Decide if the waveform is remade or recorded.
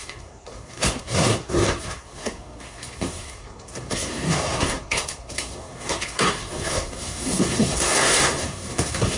remade